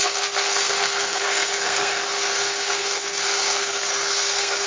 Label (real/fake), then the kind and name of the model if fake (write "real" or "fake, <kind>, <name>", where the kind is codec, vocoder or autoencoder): fake, codec, SNAC